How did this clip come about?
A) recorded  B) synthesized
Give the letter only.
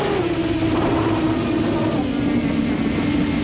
A